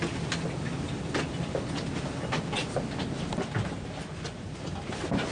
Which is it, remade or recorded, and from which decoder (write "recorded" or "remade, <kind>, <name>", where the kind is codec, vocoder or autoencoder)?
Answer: recorded